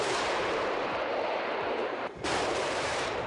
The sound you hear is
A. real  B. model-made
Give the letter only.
B